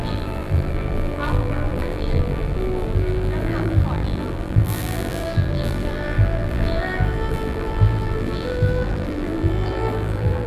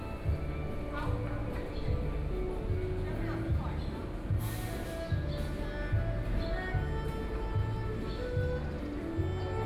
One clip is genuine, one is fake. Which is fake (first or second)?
first